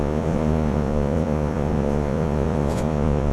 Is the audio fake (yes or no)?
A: yes